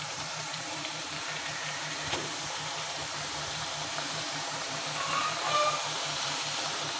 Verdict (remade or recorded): remade